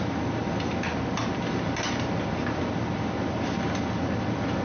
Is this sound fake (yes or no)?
no